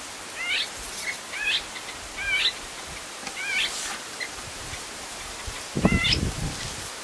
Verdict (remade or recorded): recorded